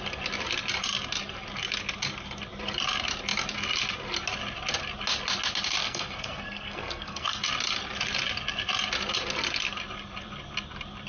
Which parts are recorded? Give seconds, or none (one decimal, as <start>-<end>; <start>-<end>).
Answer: 0.0-5.8; 7.4-11.1